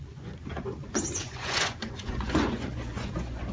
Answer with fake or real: fake